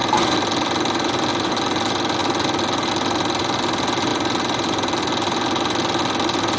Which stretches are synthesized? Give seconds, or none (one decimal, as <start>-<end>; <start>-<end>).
2.2-2.9